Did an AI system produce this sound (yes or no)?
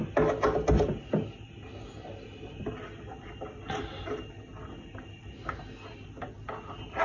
no